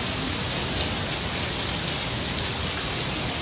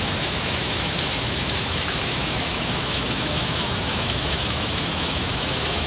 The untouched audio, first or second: first